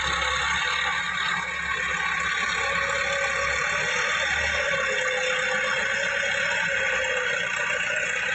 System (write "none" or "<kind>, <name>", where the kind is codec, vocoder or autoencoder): none